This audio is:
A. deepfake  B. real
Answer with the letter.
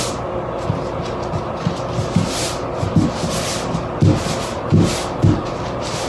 B